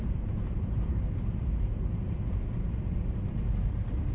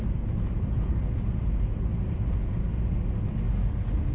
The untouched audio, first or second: second